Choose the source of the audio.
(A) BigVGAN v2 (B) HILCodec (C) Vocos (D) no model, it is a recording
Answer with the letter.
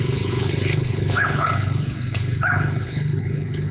B